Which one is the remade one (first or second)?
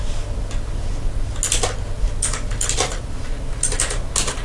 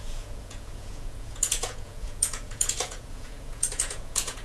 second